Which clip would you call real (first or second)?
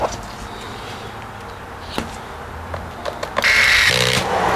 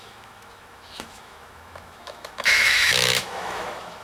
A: first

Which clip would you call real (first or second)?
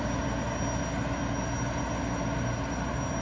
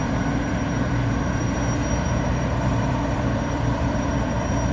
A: first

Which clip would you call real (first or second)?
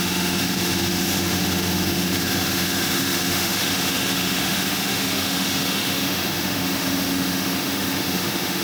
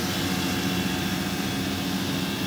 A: second